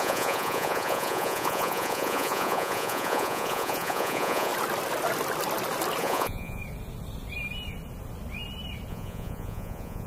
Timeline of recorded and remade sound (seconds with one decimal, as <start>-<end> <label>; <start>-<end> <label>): 0.0-4.5 remade; 4.5-6.0 recorded; 6.0-6.6 remade; 6.6-8.9 recorded; 8.9-10.1 remade